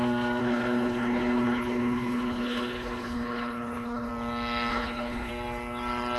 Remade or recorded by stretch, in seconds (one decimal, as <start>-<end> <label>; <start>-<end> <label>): 0.0-0.4 recorded; 0.4-4.1 remade; 4.1-4.7 recorded; 4.7-5.3 remade; 5.3-6.2 recorded